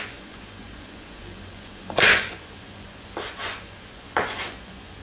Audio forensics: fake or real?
fake